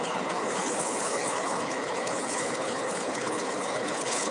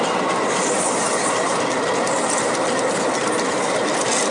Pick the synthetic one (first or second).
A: first